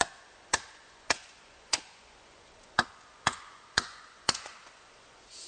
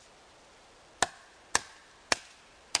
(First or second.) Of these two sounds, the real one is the second